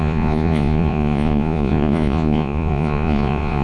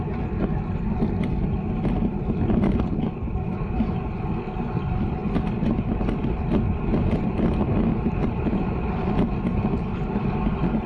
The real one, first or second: second